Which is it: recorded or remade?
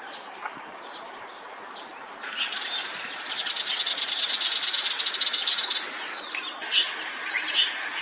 recorded